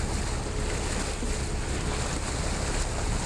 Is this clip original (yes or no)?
yes